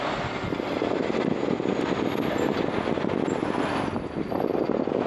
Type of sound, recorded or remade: recorded